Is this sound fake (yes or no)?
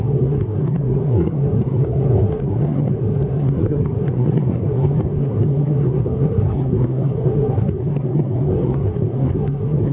yes